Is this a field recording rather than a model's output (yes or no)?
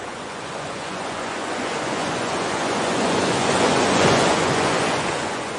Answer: no